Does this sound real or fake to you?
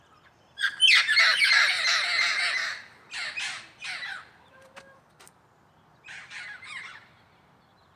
real